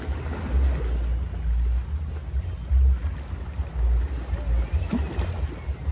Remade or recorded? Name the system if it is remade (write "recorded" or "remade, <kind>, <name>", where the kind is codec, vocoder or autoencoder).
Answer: recorded